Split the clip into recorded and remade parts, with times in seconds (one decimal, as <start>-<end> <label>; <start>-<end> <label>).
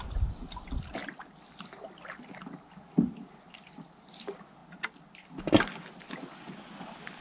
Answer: 0.0-7.2 recorded